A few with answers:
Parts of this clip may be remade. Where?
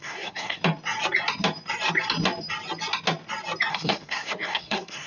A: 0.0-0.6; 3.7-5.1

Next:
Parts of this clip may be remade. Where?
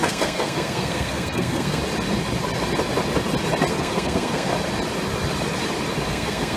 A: 0.0-1.8; 3.7-4.5; 6.1-6.6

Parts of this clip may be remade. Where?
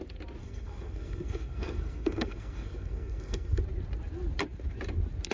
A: 0.4-3.6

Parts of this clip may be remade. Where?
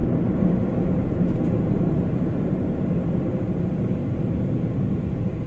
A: none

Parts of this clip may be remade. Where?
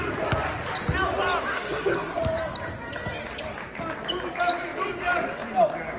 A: 1.5-2.2